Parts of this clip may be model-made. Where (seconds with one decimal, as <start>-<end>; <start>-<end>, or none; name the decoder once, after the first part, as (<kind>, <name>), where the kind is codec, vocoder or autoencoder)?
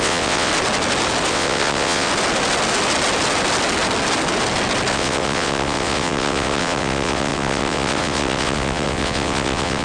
0.0-0.5 (vocoder, WaveNeXt); 1.3-2.1; 4.9-9.8